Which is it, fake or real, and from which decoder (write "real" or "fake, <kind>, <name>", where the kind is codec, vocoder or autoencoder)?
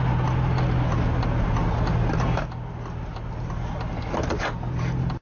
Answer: real